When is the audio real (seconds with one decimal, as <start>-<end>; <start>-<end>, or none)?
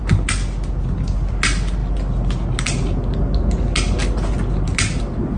0.0-5.4